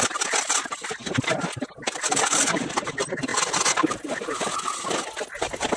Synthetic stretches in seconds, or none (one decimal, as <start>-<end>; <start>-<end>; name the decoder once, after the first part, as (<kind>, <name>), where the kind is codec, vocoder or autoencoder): none